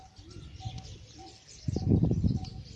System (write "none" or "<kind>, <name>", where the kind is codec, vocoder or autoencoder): none